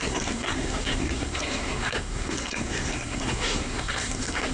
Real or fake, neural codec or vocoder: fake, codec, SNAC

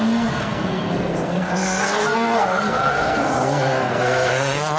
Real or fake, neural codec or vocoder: fake, codec, SNAC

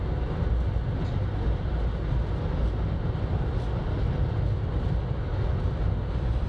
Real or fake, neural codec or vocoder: real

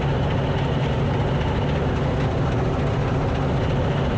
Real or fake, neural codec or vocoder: real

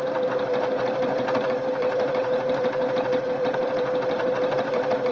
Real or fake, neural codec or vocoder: fake, vocoder, BigVGAN v2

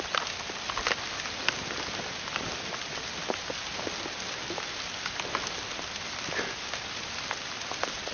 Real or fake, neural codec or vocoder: real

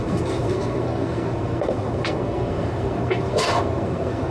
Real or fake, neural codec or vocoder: fake, codec, SNAC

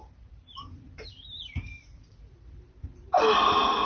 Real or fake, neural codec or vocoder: fake, vocoder, BigVGAN v2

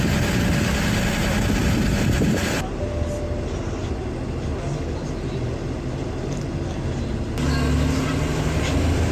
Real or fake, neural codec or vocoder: real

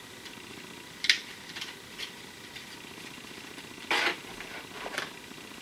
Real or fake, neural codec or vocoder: real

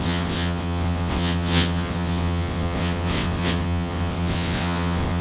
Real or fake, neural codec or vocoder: fake, vocoder, WaveNeXt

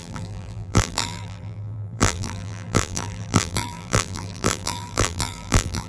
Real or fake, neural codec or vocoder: fake, vocoder, BigVGAN v2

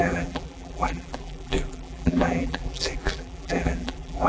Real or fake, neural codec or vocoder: fake, vocoder, BigVGAN v2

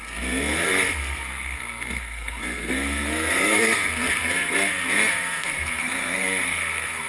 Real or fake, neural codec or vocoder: fake, codec, SNAC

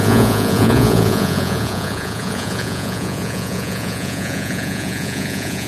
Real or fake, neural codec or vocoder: fake, vocoder, Vocos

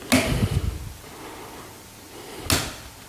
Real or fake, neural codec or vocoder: real